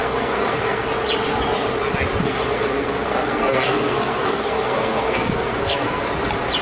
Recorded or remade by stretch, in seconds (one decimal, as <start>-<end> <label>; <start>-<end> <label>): 0.0-0.9 remade; 0.9-2.2 recorded; 2.2-6.0 remade; 6.0-6.6 recorded